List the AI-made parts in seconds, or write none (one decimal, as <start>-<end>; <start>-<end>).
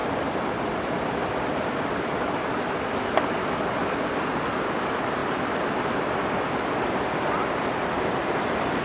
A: none